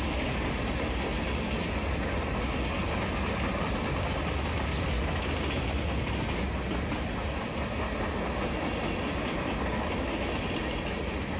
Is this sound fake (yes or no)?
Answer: no